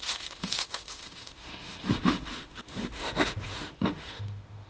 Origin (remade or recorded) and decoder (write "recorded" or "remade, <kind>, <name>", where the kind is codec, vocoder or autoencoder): remade, autoencoder, DAC-VAE